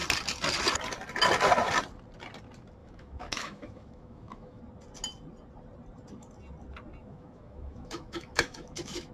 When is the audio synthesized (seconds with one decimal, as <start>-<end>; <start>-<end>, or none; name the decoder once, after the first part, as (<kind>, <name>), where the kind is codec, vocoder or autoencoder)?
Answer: 2.8-4.6 (autoencoder, DAC-VAE); 7.0-9.1